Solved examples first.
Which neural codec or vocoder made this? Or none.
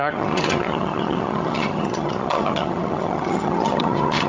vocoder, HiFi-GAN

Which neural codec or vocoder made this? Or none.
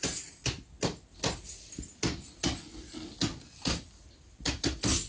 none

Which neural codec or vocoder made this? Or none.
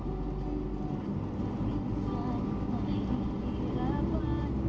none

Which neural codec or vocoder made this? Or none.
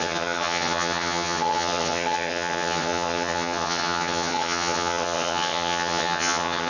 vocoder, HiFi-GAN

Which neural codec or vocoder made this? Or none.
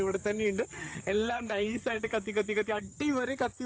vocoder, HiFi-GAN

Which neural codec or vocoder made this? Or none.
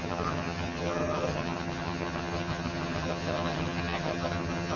vocoder, HiFi-GAN